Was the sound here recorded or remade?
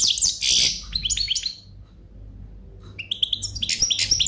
recorded